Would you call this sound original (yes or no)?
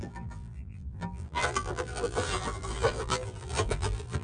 no